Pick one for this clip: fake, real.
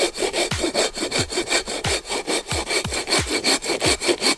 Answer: fake